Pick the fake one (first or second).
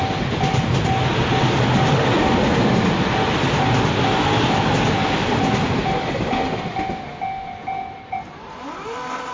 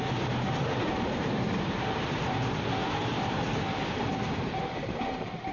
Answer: second